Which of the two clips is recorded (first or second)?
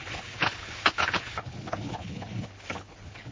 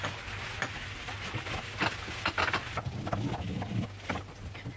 second